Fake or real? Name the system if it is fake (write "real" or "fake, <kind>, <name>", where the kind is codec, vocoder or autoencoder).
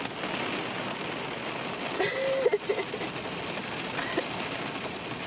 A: real